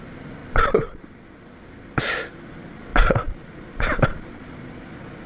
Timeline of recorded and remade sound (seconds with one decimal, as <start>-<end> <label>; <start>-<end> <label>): 0.0-5.3 recorded